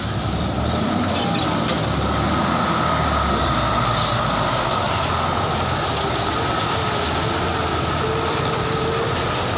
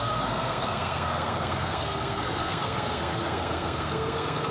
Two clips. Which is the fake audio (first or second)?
second